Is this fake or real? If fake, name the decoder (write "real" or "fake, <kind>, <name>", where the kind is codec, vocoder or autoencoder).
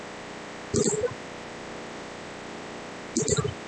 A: real